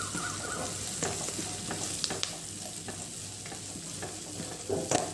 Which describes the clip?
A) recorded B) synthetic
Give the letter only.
A